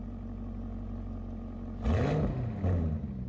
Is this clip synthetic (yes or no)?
no